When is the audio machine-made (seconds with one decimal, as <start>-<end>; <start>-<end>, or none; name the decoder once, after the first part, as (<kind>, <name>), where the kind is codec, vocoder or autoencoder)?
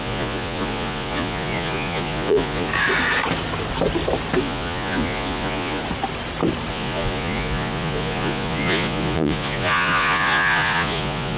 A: 0.0-2.7 (vocoder, Vocos); 4.4-5.8; 6.7-11.4